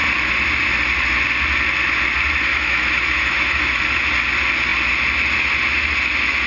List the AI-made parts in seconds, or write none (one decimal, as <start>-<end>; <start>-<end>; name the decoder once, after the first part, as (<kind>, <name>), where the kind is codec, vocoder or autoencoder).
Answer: 2.5-3.8 (autoencoder, DAC-VAE)